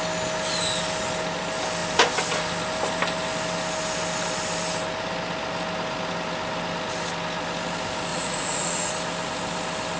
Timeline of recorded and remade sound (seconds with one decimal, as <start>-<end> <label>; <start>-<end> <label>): 0.0-8.1 recorded; 8.1-8.9 remade; 8.9-10.0 recorded